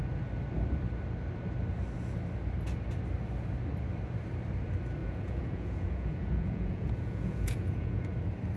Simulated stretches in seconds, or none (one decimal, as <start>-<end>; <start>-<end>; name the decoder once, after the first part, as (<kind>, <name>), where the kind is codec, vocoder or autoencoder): 5.0-8.0 (vocoder, Vocos)